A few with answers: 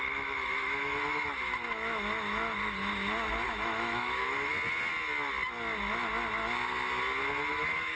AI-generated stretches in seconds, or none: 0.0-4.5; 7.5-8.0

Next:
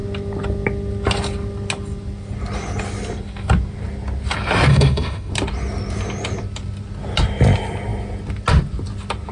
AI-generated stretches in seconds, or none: 4.7-5.3

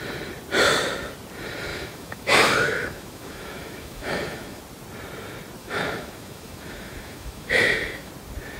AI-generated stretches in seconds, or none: 1.7-4.6; 5.6-8.1

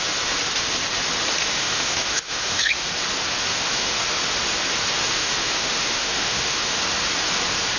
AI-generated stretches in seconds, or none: 1.4-2.9; 3.5-4.0; 5.0-6.8

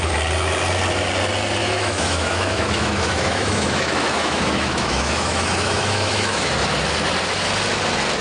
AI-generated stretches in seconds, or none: 1.6-6.5